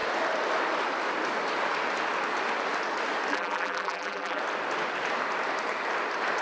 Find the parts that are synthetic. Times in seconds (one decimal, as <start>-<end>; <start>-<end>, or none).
3.3-4.4